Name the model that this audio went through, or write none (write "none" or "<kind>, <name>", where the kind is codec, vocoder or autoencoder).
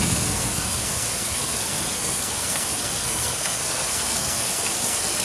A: codec, SNAC